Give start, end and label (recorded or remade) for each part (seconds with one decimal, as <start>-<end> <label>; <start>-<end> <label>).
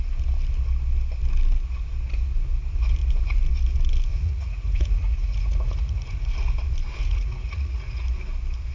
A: 0.0-4.1 recorded; 4.1-6.3 remade; 6.3-7.0 recorded; 7.0-8.0 remade; 8.0-8.7 recorded